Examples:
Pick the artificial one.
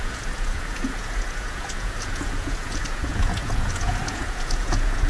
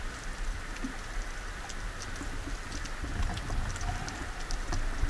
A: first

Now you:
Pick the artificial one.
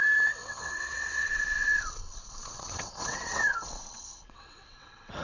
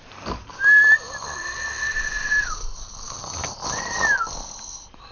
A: first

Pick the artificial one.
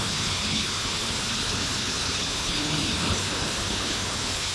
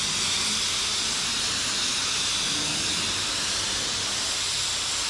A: first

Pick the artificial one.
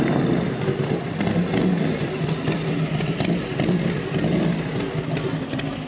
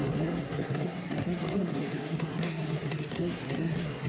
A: second